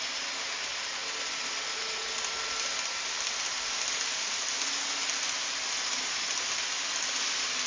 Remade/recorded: recorded